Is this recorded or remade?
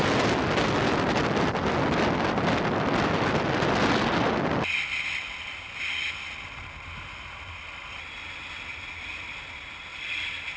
recorded